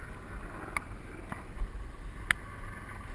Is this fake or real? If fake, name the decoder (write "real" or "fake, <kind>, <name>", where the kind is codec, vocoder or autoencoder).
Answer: real